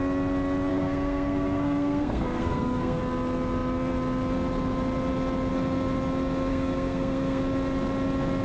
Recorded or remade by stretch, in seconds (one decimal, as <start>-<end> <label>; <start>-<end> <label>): 0.0-0.7 recorded; 0.7-3.0 remade; 3.0-6.5 recorded; 6.5-7.4 remade; 7.4-8.4 recorded